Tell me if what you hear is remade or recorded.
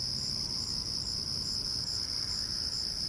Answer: remade